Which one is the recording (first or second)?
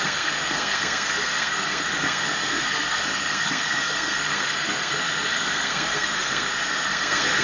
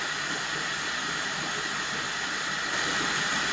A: second